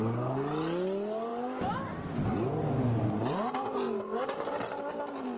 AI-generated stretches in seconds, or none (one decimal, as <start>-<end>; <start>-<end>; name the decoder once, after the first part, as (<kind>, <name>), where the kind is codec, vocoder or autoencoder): none